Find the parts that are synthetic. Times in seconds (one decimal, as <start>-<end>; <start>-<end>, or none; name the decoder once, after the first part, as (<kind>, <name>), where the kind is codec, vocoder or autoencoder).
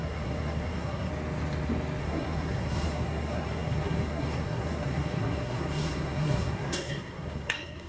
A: 0.0-1.1 (codec, SNAC); 2.0-7.9